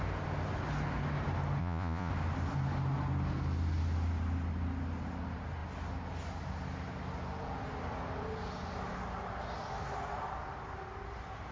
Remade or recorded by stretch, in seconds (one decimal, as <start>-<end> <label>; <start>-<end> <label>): 0.0-1.6 recorded; 1.6-2.1 remade; 2.1-11.5 recorded